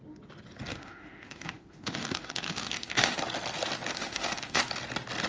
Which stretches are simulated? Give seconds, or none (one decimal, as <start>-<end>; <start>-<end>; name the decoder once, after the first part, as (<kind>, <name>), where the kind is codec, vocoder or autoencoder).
0.7-3.2 (autoencoder, DAC-VAE); 3.9-4.6

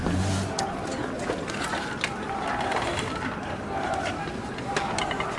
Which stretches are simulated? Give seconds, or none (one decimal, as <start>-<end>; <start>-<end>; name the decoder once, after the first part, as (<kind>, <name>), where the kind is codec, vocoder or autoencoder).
none

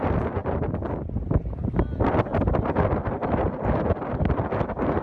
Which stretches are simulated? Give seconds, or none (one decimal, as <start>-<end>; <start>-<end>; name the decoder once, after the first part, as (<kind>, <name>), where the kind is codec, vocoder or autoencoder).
none

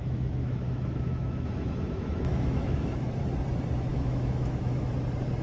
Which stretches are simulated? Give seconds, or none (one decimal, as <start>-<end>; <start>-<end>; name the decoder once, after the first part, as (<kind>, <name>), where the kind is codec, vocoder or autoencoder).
0.0-3.0 (autoencoder, DAC-VAE); 3.9-4.9

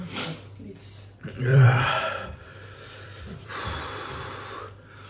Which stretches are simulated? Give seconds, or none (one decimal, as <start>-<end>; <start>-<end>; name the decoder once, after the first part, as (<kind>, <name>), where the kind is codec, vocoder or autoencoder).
1.5-4.6 (vocoder, BigVGAN v2)

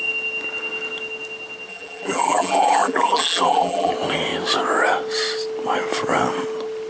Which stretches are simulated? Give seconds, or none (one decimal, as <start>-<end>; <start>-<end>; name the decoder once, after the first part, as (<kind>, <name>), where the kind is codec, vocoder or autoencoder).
1.7-3.9 (vocoder, BigVGAN v2)